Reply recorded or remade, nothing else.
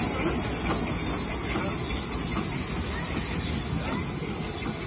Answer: recorded